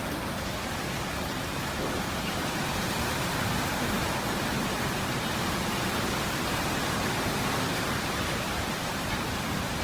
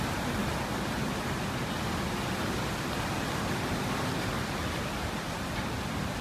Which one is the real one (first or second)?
second